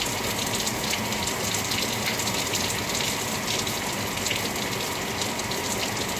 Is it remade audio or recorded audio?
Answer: recorded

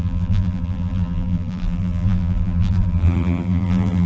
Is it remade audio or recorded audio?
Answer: remade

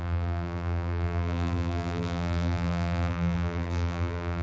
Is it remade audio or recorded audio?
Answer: remade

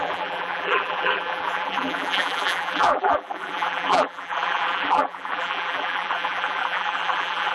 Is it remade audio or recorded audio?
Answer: remade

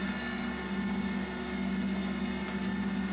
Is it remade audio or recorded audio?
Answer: recorded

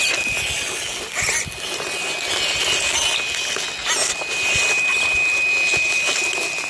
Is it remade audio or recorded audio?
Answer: recorded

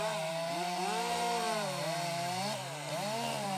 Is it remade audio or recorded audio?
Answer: remade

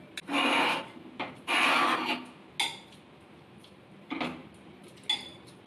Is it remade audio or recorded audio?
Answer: recorded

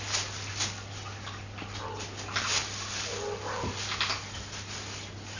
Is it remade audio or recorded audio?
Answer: recorded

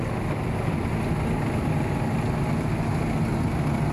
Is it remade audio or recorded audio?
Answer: recorded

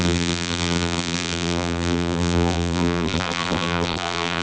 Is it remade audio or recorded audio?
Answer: remade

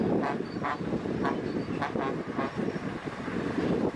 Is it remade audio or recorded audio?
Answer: recorded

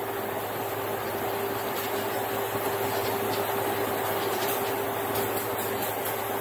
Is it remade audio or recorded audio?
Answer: recorded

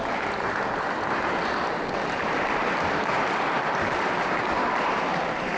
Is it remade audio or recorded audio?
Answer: remade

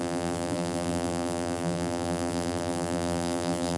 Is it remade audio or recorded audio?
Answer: remade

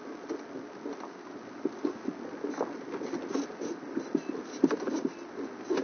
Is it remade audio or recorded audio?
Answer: recorded